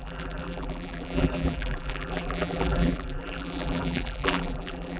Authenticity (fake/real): fake